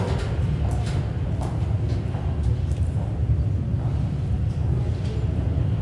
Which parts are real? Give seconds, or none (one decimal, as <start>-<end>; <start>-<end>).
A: 0.0-5.8